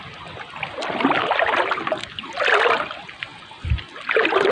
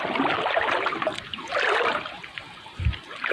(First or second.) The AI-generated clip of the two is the second